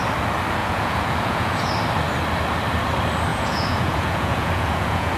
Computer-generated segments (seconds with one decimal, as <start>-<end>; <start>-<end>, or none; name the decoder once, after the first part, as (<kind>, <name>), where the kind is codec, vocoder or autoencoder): 0.6-1.7 (vocoder, Vocos); 3.3-5.2